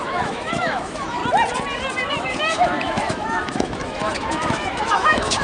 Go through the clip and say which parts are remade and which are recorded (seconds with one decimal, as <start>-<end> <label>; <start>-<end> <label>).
0.0-1.2 remade; 1.2-2.1 recorded; 2.1-5.4 remade